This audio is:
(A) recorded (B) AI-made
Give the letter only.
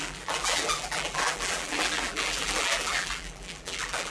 B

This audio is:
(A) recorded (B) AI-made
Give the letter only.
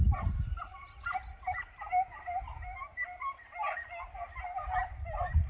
A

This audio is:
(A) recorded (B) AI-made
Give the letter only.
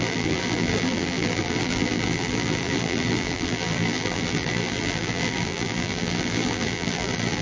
B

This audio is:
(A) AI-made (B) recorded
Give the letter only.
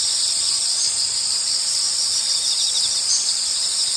A